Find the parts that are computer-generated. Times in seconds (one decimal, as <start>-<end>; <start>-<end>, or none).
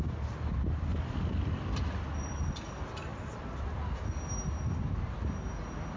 none